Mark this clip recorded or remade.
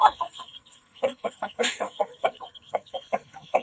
remade